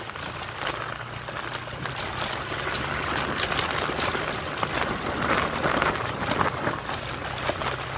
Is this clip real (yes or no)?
yes